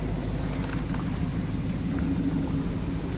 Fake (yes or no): no